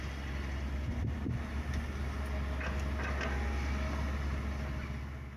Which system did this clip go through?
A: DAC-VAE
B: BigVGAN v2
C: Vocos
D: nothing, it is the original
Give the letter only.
D